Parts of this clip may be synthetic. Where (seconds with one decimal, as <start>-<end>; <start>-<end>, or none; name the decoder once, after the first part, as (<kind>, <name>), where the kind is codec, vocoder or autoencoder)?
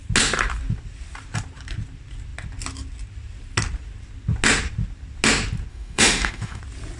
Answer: 5.7-6.6 (autoencoder, DAC-VAE)